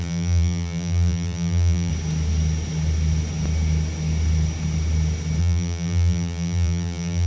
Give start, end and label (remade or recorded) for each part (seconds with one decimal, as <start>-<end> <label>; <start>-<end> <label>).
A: 0.0-1.9 remade; 1.9-5.4 recorded; 5.4-7.3 remade